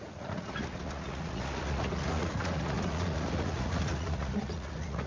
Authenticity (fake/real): fake